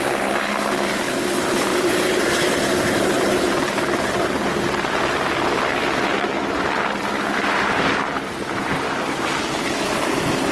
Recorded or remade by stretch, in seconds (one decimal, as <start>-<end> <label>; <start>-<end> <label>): 0.0-10.5 remade